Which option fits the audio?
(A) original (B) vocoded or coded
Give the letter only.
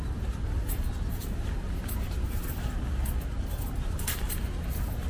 A